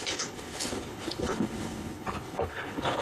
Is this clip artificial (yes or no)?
yes